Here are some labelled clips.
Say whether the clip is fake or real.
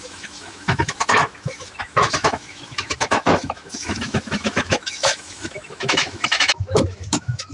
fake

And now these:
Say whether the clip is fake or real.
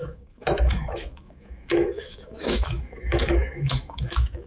fake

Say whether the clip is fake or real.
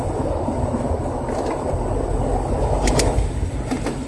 real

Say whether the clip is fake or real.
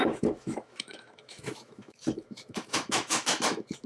fake